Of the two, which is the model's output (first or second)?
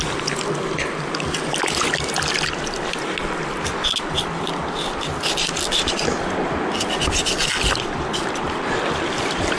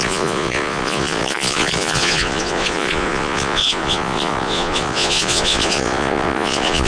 second